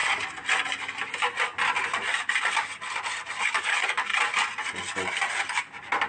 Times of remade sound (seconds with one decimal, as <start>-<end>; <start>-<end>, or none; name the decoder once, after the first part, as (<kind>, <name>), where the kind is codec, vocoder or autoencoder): 3.5-4.1 (codec, DAC)